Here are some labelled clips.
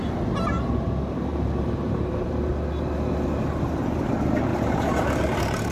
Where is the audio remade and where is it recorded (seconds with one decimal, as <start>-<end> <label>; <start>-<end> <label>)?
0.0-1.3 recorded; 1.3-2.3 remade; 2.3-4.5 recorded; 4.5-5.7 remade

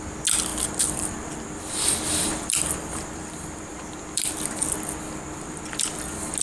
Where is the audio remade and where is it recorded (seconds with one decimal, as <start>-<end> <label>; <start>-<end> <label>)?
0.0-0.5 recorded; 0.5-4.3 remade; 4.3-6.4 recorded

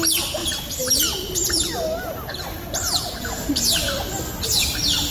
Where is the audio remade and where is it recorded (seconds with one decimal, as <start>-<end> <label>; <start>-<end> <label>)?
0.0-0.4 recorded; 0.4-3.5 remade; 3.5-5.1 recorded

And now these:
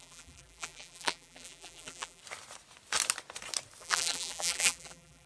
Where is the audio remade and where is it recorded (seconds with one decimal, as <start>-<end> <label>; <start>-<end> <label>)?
0.0-2.2 remade; 2.2-3.8 recorded; 3.8-5.3 remade

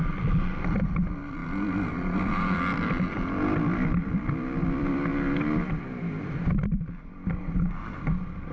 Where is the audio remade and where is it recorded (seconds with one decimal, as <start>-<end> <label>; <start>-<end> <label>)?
0.0-1.4 remade; 1.4-2.2 recorded; 2.2-5.1 remade; 5.1-6.0 recorded; 6.0-8.5 remade